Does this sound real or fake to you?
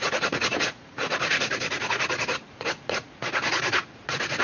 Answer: fake